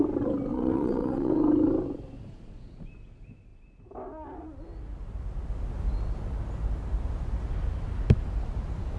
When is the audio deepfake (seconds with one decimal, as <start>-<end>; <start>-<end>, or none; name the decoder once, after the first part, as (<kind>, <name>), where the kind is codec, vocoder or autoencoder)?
0.5-1.3 (vocoder, Vocos)